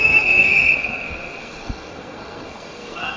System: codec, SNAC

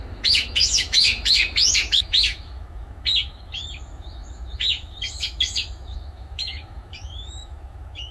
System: autoencoder, DAC-VAE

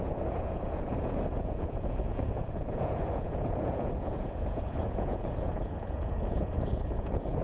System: vocoder, Vocos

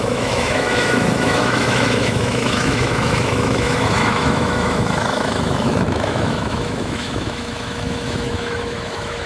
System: autoencoder, DAC-VAE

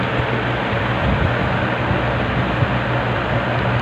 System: none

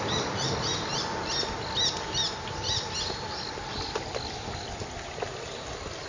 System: none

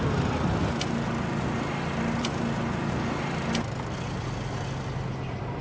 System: none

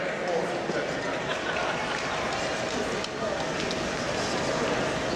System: none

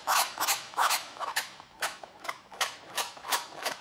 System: autoencoder, DAC-VAE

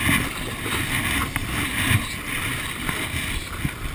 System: none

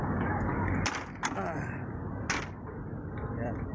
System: none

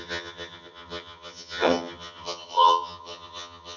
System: vocoder, HiFi-GAN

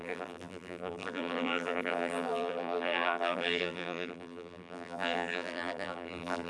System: vocoder, BigVGAN v2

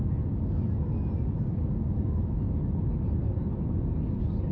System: none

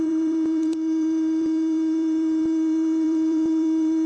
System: vocoder, BigVGAN v2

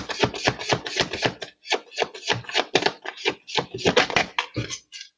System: none